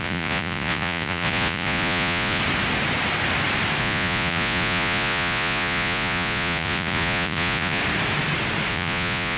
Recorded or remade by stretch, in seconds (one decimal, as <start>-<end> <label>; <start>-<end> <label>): 0.0-2.4 remade; 2.4-3.8 recorded; 3.8-7.8 remade; 7.8-8.7 recorded; 8.7-9.4 remade